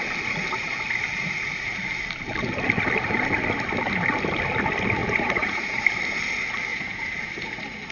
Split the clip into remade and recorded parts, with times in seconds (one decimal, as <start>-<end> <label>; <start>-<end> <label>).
0.0-1.1 recorded; 1.1-1.9 remade; 1.9-5.0 recorded; 5.0-5.8 remade; 5.8-6.7 recorded; 6.7-7.9 remade